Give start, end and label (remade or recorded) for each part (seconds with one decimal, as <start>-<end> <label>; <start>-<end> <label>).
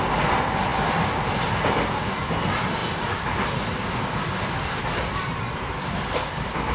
0.0-6.7 recorded